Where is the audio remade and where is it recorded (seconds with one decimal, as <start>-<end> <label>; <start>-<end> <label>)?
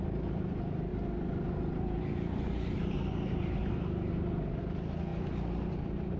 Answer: 0.0-6.2 recorded